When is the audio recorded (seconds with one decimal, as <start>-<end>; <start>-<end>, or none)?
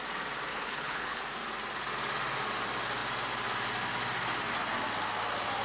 0.0-0.5; 1.2-5.6